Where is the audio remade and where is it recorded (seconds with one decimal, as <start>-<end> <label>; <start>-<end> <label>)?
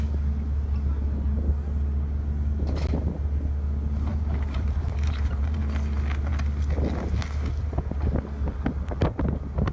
0.0-4.1 recorded; 4.1-5.6 remade; 5.6-9.7 recorded